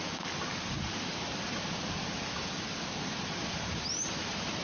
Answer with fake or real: real